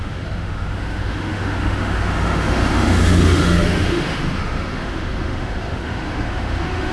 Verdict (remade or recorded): remade